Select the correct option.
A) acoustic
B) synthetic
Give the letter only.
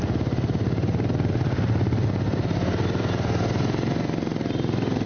A